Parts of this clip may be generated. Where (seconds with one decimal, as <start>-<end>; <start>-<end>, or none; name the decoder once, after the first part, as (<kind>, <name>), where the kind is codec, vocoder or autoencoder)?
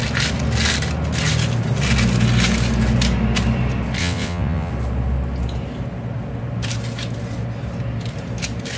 4.0-4.7 (vocoder, WaveNeXt)